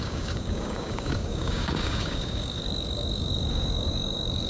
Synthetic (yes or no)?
yes